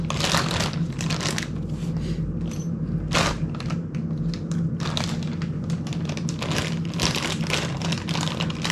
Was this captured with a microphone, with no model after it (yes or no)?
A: yes